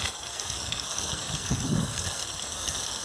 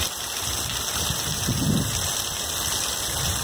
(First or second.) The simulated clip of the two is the first